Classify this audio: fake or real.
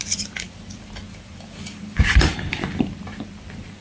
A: fake